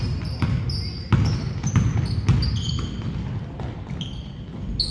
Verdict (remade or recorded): recorded